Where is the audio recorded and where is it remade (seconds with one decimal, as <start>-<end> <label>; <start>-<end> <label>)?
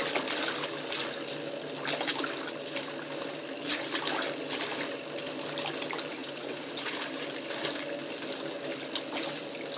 0.0-6.2 recorded; 6.2-6.9 remade; 6.9-9.8 recorded